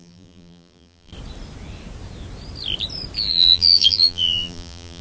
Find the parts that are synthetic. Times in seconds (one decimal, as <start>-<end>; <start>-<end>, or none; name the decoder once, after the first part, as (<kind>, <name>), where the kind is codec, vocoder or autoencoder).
0.0-1.1 (vocoder, BigVGAN v2); 3.3-5.0